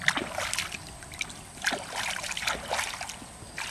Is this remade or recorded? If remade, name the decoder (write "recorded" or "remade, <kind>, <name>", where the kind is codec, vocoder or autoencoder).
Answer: recorded